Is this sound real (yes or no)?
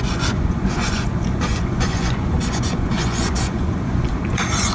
no